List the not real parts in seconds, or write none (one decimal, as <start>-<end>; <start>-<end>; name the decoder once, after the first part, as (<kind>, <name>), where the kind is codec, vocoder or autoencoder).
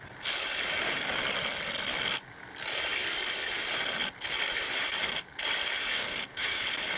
5.9-6.6 (codec, DAC)